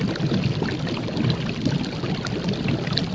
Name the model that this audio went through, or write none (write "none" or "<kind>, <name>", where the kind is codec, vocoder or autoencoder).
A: none